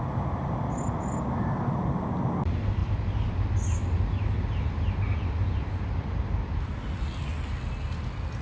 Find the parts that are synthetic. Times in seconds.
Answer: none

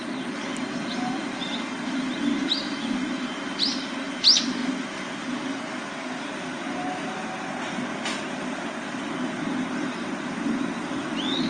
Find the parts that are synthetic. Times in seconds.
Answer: none

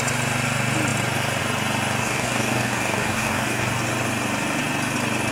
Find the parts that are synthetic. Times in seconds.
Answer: 2.0-3.7 (codec, DAC)

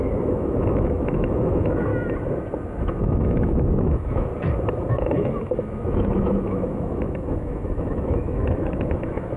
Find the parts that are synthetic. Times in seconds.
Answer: 0.0-1.9 (autoencoder, DAC-VAE); 2.8-4.3; 4.9-9.4

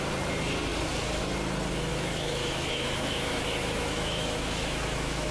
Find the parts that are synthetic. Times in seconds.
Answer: 1.9-5.3 (autoencoder, DAC-VAE)

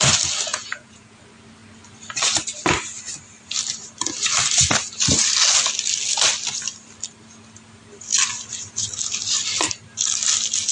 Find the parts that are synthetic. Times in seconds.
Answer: 0.5-1.2 (vocoder, Vocos)